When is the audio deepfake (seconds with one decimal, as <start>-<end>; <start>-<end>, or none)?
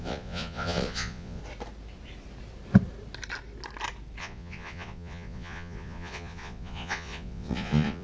0.0-1.4; 4.2-8.0